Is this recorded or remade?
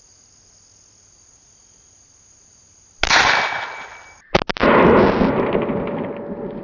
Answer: recorded